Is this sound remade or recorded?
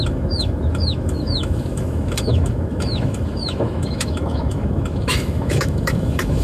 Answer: remade